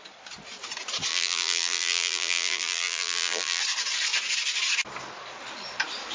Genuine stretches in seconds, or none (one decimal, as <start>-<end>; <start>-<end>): 0.0-1.1; 3.6-6.1